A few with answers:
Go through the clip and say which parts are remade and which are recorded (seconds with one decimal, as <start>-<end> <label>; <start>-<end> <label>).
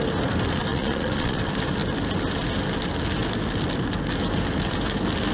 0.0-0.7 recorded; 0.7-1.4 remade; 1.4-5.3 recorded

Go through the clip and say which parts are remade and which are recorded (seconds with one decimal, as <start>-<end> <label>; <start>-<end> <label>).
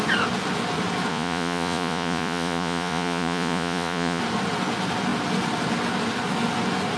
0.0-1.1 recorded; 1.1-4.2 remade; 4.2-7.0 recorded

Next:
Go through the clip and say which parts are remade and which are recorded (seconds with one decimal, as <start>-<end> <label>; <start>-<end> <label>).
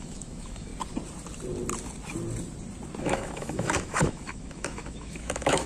0.0-0.7 remade; 0.7-3.0 recorded; 3.0-5.7 remade